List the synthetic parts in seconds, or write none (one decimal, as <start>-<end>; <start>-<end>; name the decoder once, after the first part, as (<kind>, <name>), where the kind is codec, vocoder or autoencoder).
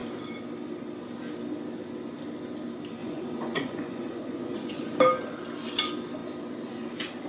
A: 3.0-5.0 (vocoder, Vocos)